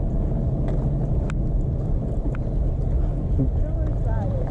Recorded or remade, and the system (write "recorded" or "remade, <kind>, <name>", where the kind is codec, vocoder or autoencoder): recorded